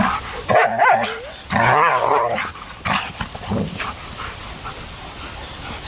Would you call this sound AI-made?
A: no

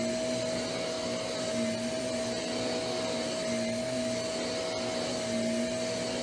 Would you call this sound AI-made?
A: no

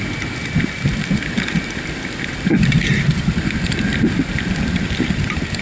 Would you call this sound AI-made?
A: yes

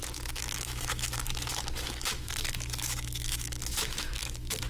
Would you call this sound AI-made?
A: yes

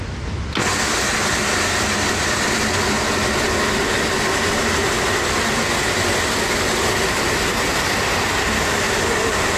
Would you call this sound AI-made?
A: no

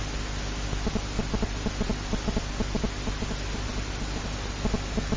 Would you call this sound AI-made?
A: no